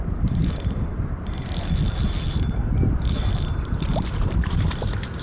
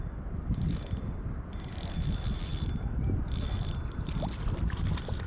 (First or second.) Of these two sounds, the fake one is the first